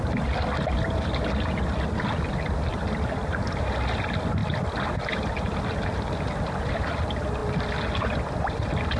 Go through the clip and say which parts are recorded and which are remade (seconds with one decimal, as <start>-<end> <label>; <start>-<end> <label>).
0.0-9.0 recorded